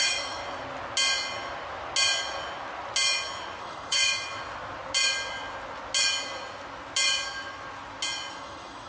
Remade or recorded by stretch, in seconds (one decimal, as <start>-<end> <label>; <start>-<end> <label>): 0.0-0.4 remade; 0.4-3.6 recorded; 3.6-4.0 remade; 4.0-8.3 recorded; 8.3-8.9 remade